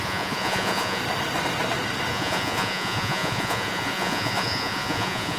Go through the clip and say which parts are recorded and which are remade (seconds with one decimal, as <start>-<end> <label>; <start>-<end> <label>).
0.0-1.0 remade; 1.0-2.1 recorded; 2.1-5.4 remade